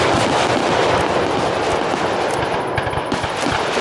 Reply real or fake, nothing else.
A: real